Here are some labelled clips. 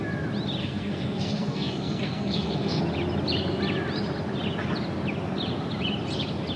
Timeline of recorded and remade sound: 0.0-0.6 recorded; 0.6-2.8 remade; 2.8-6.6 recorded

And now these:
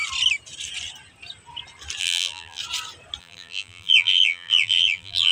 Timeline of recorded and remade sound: 0.0-2.0 recorded; 2.0-2.6 remade; 2.6-3.2 recorded; 3.2-5.3 remade

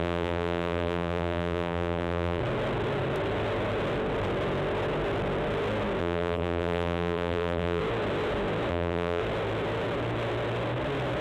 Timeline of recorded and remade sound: 0.0-2.4 remade; 2.4-6.0 recorded; 6.0-7.8 remade; 7.8-8.7 recorded; 8.7-9.2 remade; 9.2-11.2 recorded

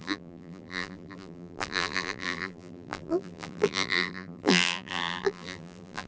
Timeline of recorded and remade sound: 0.0-6.1 remade

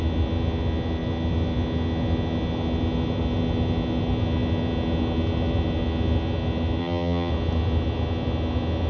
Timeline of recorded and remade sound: 0.0-6.8 recorded; 6.8-7.3 remade; 7.3-8.9 recorded